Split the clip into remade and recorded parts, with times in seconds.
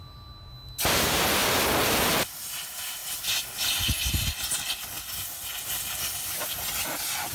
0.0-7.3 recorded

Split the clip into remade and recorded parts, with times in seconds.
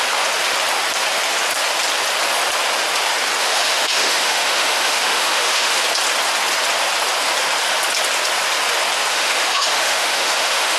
0.0-3.4 recorded; 3.4-5.8 remade; 5.8-9.1 recorded; 9.1-10.8 remade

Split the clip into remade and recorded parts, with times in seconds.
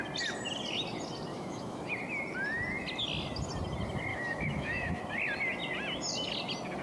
0.0-1.3 recorded; 1.3-1.9 remade; 1.9-4.1 recorded; 4.1-5.0 remade; 5.0-6.8 recorded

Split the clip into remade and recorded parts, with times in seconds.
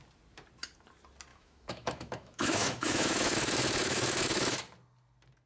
0.0-1.3 recorded; 1.3-4.6 remade; 4.6-5.5 recorded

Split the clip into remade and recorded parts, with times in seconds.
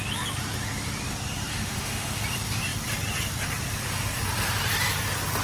0.0-1.5 recorded; 1.5-2.2 remade; 2.2-5.4 recorded